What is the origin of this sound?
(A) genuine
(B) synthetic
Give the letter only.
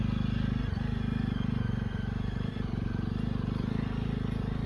A